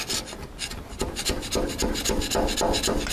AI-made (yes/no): no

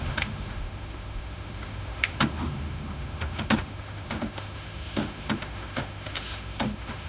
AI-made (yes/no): yes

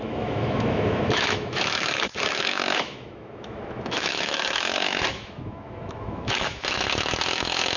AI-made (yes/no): yes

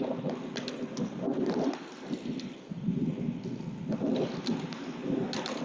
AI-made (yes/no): no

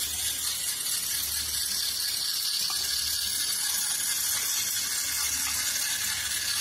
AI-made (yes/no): no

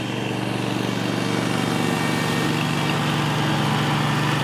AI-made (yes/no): no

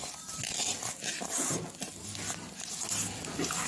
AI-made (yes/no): no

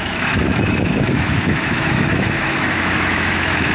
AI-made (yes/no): yes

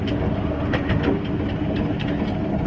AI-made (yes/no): no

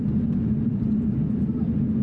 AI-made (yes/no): no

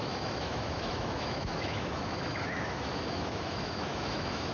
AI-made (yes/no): yes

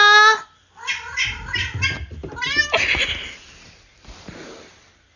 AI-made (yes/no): no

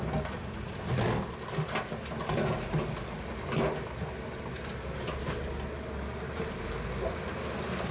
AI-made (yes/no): no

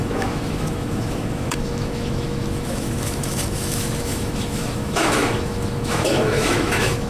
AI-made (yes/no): yes